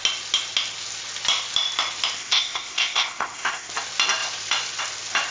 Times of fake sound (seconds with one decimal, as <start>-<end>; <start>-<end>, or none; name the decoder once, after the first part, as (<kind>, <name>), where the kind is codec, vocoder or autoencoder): 2.2-3.7 (codec, ZipCodec)